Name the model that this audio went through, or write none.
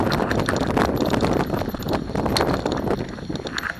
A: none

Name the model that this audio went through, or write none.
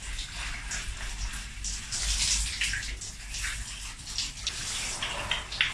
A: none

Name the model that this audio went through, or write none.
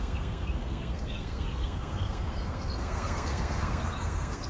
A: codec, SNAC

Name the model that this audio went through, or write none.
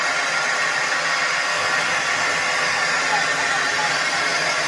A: none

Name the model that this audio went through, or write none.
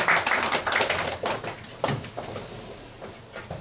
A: none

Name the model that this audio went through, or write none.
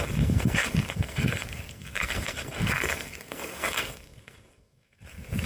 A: codec, SNAC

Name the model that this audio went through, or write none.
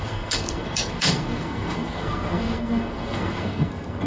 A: codec, SNAC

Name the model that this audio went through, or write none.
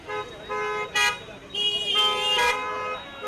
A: none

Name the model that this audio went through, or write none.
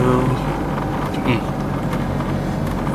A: none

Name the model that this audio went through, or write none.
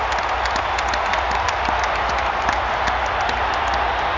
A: none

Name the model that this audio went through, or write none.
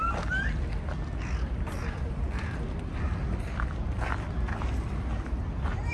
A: none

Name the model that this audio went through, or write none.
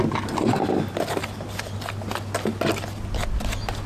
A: none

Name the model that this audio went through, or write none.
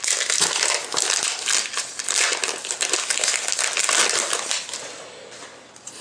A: none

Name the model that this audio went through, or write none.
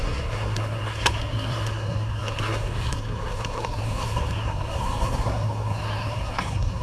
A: codec, SNAC